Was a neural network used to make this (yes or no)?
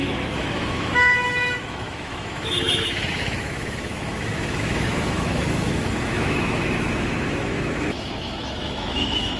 yes